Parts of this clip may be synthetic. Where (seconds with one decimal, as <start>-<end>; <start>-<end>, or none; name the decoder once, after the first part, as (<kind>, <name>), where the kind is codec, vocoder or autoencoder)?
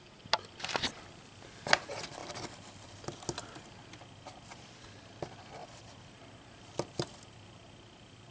none